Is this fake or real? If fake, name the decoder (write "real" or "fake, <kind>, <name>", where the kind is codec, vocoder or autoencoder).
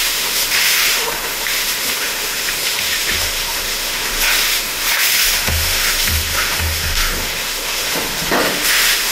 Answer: fake, autoencoder, DAC-VAE